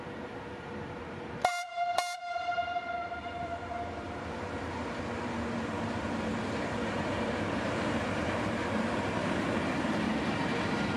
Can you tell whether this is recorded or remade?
remade